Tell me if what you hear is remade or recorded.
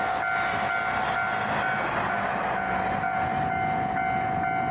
recorded